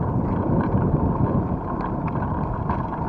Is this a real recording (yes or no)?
yes